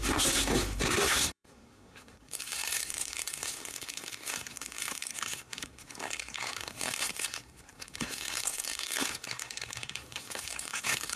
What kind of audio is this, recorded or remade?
remade